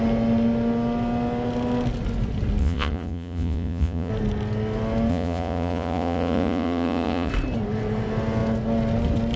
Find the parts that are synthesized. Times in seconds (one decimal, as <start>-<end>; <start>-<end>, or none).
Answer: 2.6-4.1; 5.1-7.3